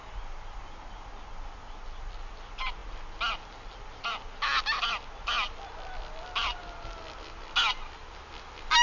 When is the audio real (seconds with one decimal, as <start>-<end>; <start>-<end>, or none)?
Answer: 0.0-8.8